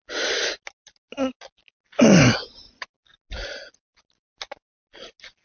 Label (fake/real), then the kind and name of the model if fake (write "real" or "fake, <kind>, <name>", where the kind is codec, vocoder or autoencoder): real